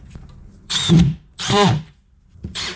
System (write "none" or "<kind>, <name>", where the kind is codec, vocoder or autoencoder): vocoder, BigVGAN v2